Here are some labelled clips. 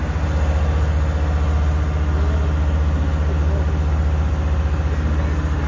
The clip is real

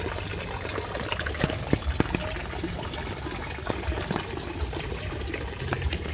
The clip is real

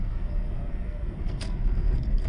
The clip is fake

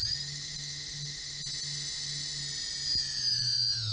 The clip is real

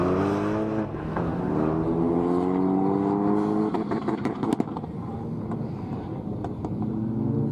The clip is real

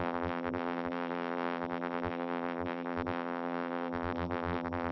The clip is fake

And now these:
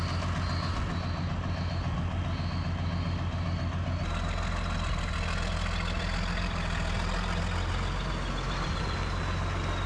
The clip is real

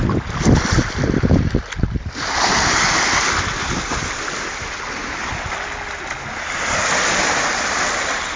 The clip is real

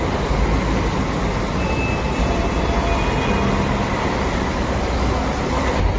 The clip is real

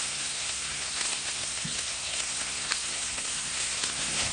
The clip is fake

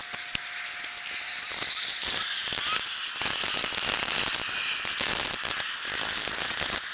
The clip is real